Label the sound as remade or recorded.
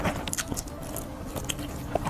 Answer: recorded